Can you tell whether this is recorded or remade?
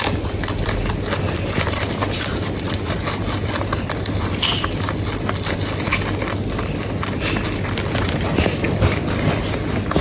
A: recorded